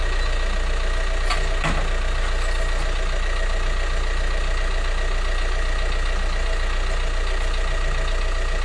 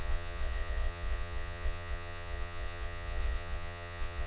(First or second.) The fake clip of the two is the second